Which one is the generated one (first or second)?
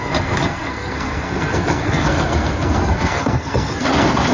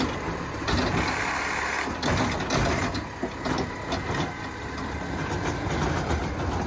first